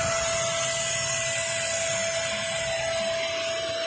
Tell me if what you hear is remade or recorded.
recorded